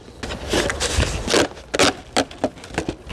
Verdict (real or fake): real